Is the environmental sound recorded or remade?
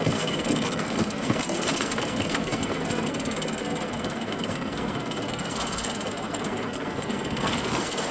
remade